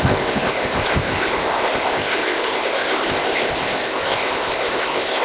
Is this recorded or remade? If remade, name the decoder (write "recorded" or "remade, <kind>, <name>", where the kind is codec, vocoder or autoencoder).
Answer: remade, codec, ZipCodec